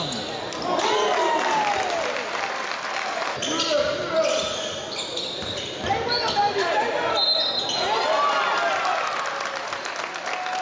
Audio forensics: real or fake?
real